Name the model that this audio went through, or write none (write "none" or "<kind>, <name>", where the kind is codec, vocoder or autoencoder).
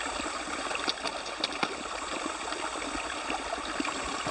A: none